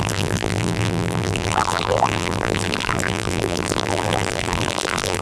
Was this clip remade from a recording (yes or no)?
yes